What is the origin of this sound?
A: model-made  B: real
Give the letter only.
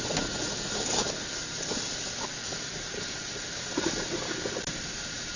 B